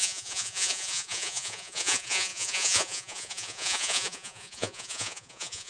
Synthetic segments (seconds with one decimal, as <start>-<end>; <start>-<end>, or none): 0.0-5.7